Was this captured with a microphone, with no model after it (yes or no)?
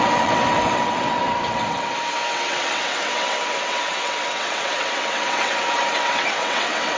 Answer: no